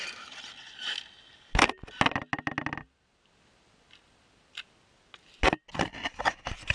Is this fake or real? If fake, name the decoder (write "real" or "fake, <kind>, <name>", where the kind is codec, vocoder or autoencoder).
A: real